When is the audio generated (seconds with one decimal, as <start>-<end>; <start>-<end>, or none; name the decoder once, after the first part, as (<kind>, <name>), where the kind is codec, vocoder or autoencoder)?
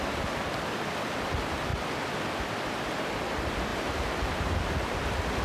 3.7-4.5 (vocoder, BigVGAN v2)